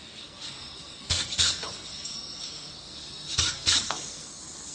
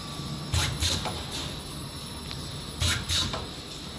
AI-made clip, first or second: first